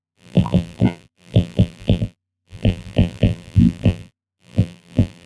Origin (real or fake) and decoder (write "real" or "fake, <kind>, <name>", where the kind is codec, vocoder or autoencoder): fake, vocoder, BigVGAN v2